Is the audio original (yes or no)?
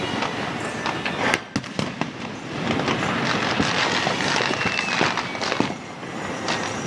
yes